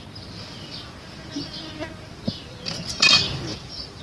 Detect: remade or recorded recorded